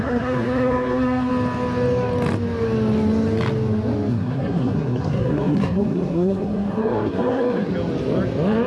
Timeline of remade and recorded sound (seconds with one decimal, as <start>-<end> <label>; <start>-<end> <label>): 0.0-1.3 remade; 1.3-4.1 recorded; 4.1-7.7 remade; 7.7-8.7 recorded